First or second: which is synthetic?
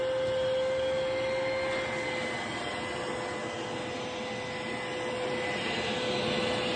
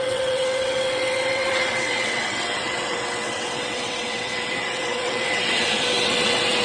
second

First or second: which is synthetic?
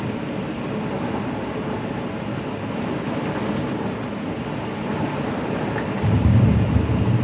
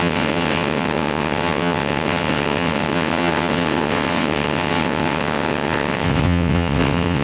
second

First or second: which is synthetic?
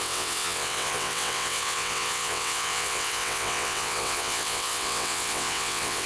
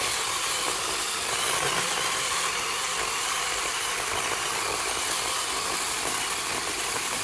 first